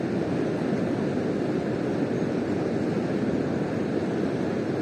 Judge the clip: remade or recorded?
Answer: recorded